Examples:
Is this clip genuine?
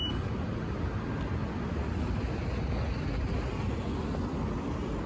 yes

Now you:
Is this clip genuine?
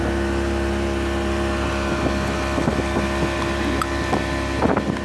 yes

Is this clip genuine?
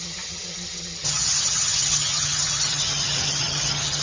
no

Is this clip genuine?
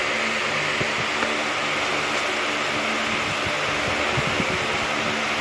yes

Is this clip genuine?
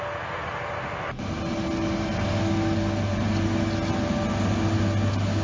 yes